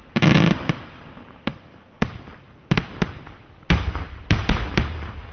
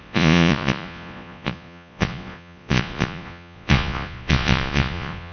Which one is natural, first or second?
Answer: first